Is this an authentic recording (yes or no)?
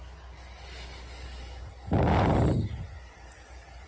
yes